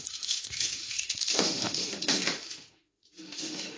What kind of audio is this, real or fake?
fake